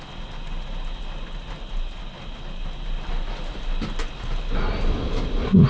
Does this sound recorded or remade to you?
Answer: recorded